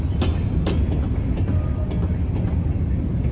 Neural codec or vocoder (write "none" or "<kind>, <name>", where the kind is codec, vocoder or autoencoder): none